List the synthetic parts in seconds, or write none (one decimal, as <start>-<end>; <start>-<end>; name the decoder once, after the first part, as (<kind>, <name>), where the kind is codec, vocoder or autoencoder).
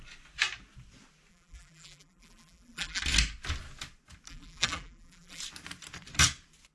1.3-3.0 (vocoder, BigVGAN v2); 4.3-5.4